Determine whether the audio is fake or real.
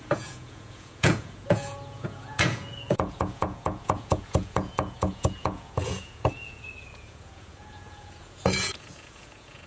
fake